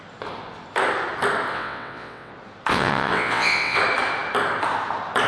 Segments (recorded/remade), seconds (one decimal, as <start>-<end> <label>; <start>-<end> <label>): 0.0-1.5 recorded; 1.5-2.3 remade; 2.3-2.7 recorded; 2.7-3.8 remade; 3.8-5.3 recorded